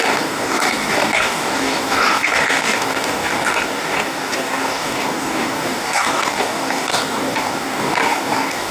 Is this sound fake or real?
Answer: fake